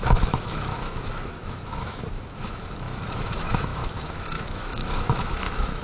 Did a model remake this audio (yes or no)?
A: yes